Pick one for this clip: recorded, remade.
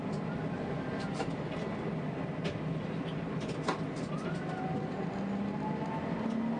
recorded